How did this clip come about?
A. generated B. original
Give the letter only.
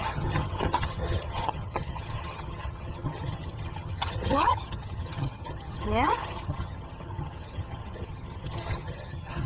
A